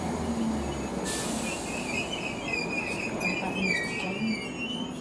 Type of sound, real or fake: real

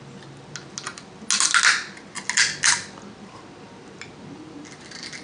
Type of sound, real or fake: real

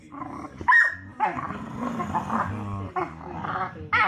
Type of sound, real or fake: real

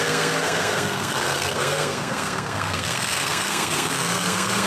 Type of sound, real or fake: fake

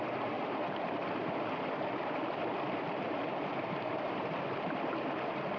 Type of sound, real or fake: real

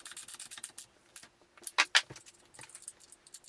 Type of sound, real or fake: real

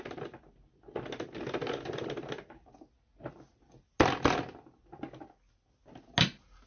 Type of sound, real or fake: real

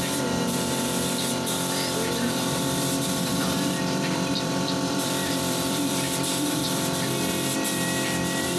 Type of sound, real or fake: fake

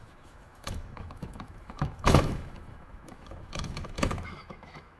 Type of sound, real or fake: fake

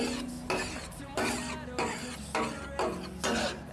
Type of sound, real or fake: real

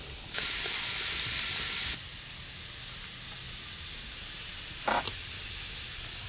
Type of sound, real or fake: real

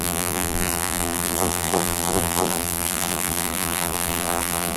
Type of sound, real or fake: fake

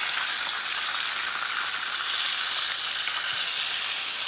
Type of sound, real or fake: real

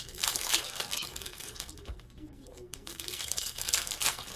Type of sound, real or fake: fake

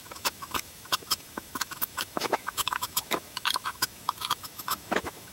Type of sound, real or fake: fake